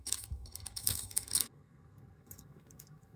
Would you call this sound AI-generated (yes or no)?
yes